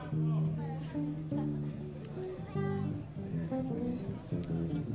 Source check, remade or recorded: recorded